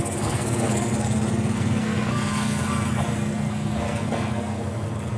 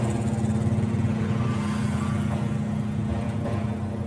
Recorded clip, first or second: second